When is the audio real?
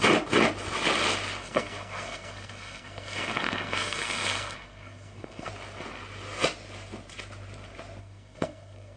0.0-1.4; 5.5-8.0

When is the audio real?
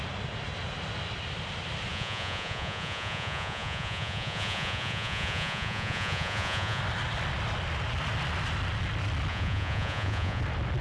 0.0-1.9; 6.8-9.3; 10.4-10.8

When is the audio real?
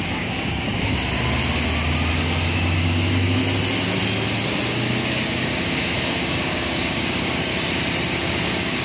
0.9-2.1; 3.4-4.7; 7.5-8.2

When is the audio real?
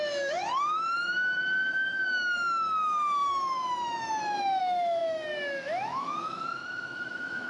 none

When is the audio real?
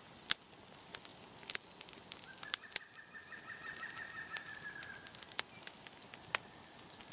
0.0-7.1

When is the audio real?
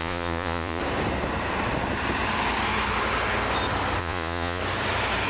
0.8-4.0; 4.6-5.3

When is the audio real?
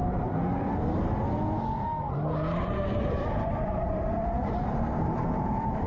0.0-3.1